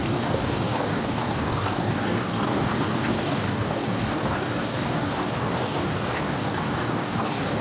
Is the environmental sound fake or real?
fake